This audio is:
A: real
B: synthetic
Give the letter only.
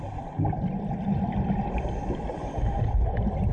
A